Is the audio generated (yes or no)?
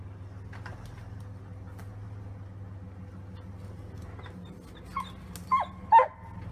no